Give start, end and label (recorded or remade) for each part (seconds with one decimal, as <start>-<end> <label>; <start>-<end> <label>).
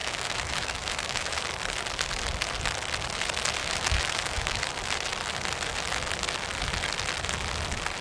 0.0-1.4 remade; 1.4-3.6 recorded; 3.6-4.6 remade; 4.6-8.0 recorded